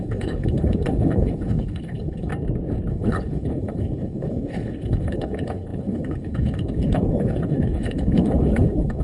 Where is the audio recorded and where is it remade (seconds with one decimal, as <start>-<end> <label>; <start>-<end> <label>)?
0.0-2.3 remade; 2.3-2.9 recorded; 2.9-9.0 remade